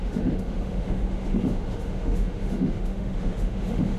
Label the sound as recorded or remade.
remade